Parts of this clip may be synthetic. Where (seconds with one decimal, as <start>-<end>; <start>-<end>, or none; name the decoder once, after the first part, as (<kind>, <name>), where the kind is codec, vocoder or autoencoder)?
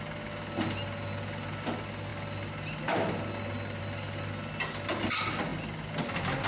none